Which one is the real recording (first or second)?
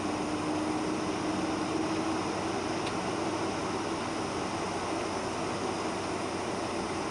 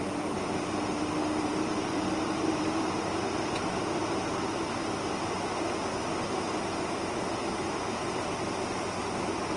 first